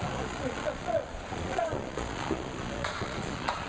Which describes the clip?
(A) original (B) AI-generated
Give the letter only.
B